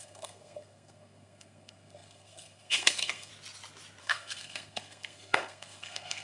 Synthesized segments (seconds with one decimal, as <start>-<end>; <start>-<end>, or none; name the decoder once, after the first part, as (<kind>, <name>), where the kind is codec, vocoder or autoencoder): 0.0-3.3 (codec, SNAC); 4.0-6.2